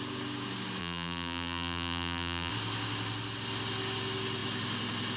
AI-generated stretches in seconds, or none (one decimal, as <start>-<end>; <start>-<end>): 0.8-2.5